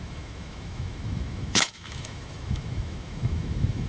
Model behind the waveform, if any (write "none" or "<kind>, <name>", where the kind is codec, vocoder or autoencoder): autoencoder, DAC-VAE